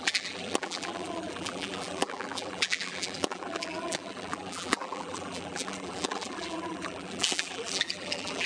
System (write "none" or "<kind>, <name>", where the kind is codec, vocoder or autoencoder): vocoder, BigVGAN v2